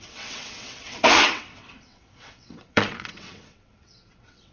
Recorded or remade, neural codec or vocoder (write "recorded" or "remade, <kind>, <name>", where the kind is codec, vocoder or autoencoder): remade, vocoder, WaveNeXt